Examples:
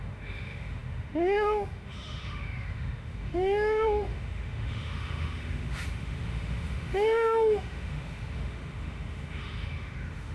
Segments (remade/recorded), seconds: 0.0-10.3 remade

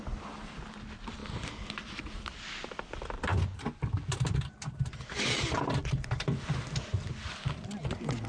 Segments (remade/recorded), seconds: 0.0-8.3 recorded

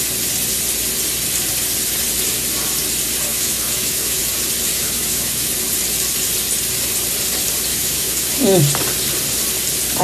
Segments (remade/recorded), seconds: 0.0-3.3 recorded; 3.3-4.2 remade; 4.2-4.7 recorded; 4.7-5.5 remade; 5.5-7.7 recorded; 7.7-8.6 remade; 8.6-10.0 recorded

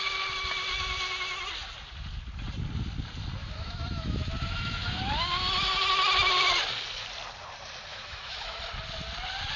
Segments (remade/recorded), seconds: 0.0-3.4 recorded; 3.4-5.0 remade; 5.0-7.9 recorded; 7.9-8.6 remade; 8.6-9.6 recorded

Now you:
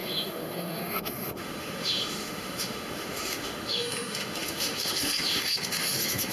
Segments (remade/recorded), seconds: 0.0-6.3 remade

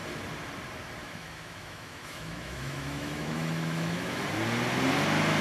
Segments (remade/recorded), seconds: 0.0-1.0 recorded; 1.0-4.2 remade; 4.2-5.4 recorded

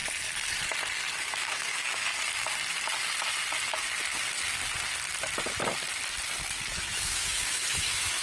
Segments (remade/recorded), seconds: 0.0-1.2 recorded; 1.2-2.1 remade; 2.1-6.7 recorded; 6.7-8.2 remade